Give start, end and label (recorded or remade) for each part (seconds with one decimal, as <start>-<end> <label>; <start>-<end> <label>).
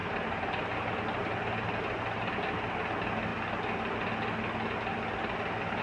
0.0-5.8 recorded